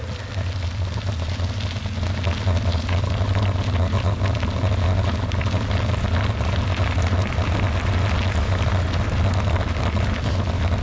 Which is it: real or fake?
real